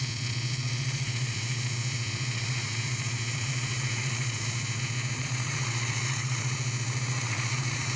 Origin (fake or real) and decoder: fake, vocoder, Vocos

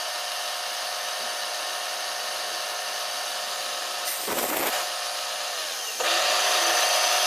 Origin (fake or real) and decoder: real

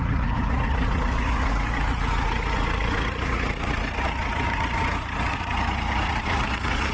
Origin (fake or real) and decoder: fake, vocoder, Vocos